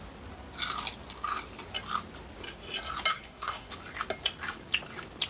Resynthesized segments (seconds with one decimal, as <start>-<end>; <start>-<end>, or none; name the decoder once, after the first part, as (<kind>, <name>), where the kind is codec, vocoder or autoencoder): 3.1-3.7 (codec, SNAC)